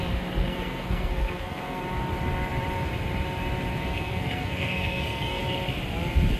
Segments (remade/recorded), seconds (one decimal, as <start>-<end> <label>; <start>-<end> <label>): 0.0-0.4 recorded; 0.4-1.8 remade; 1.8-3.9 recorded; 3.9-5.4 remade; 5.4-6.4 recorded